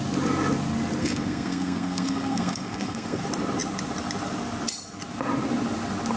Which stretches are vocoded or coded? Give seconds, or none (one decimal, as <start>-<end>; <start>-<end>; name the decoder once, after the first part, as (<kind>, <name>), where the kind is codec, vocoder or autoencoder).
1.0-3.2 (codec, SNAC)

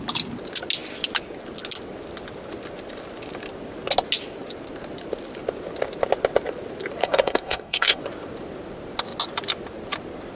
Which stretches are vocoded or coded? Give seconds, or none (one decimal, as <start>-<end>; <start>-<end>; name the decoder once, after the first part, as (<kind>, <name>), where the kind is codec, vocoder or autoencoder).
7.0-8.0 (codec, SNAC)

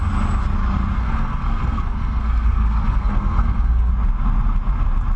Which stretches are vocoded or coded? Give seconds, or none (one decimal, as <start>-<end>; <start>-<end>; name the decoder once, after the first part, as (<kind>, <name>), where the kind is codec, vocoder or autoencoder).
1.0-3.9 (codec, SNAC)

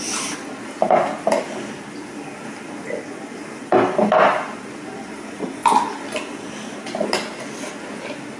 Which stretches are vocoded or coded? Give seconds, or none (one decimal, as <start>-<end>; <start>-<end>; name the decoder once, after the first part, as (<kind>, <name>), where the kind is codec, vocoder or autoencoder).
none

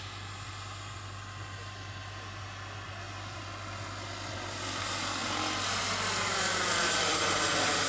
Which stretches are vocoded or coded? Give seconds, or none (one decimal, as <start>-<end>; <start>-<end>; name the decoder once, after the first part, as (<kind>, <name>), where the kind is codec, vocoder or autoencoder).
none

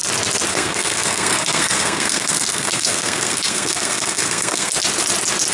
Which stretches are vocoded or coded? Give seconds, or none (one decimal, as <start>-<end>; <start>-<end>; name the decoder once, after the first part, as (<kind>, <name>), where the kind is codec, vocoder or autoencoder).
0.5-4.7 (codec, SNAC)